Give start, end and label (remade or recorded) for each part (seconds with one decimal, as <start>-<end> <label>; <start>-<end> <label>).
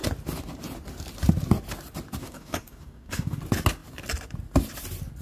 0.0-2.2 recorded; 2.2-3.4 remade; 3.4-5.2 recorded